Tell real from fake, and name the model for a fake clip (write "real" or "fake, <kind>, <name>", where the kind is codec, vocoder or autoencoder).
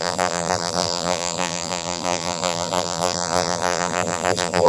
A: fake, vocoder, BigVGAN v2